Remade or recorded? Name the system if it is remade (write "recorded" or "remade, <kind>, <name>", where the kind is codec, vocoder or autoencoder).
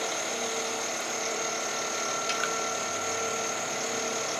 recorded